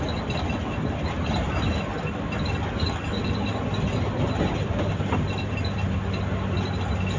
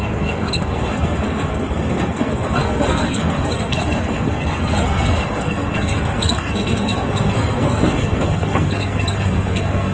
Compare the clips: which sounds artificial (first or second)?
second